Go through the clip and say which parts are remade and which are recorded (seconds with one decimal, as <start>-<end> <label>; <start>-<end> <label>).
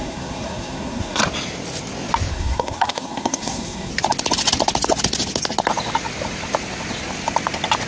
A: 0.0-1.2 remade; 1.2-2.3 recorded; 2.3-3.9 remade; 3.9-7.9 recorded